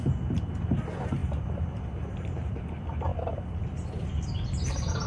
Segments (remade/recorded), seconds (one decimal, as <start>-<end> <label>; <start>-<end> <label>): 0.0-1.2 recorded; 1.2-2.7 remade; 2.7-3.1 recorded; 3.1-4.1 remade; 4.1-5.1 recorded